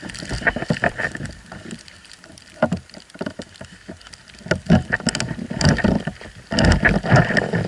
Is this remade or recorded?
recorded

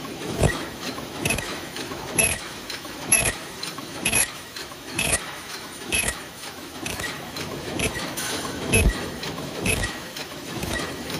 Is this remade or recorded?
remade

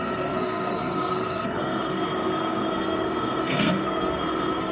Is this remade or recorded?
remade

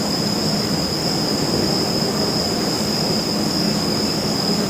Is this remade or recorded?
recorded